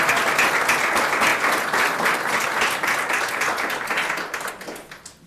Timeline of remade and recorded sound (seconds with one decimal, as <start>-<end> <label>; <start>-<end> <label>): 0.0-5.3 recorded